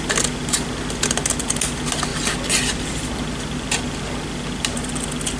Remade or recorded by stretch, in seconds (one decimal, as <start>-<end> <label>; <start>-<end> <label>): 0.0-5.4 recorded